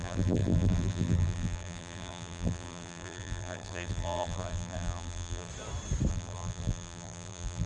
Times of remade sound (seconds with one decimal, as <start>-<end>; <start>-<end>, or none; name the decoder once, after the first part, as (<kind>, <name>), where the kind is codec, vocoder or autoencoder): 0.0-5.5 (vocoder, BigVGAN v2); 6.1-7.7

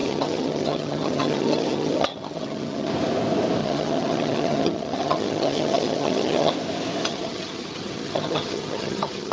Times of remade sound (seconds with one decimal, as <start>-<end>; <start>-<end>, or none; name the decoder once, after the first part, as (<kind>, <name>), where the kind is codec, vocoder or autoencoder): 0.0-2.9 (vocoder, HiFi-GAN); 3.6-6.5; 7.1-9.3

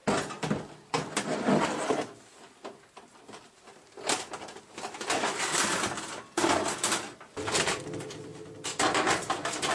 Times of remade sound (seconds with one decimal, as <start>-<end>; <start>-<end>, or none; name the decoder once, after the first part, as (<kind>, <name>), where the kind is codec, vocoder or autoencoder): 1.1-8.3 (vocoder, BigVGAN v2); 9.1-9.7

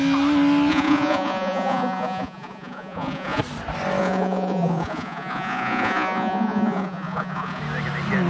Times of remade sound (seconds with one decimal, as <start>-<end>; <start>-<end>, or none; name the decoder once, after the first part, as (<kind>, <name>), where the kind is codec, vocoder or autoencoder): 0.7-3.4 (vocoder, Vocos); 4.0-7.6

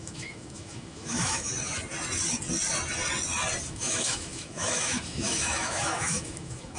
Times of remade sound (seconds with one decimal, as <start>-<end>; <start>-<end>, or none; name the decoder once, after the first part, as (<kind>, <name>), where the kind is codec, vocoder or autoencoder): 0.0-1.5 (autoencoder, DAC-VAE); 3.7-6.8

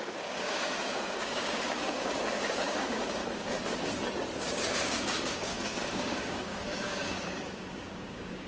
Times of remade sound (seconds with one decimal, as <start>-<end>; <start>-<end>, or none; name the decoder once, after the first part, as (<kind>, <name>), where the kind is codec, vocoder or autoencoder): 0.0-3.2 (codec, DAC); 4.4-8.5

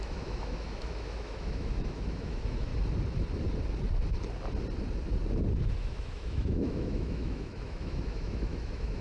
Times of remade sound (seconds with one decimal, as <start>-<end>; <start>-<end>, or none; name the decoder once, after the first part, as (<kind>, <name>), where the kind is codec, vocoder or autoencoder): 0.0-2.7 (autoencoder, DAC-VAE); 5.8-9.0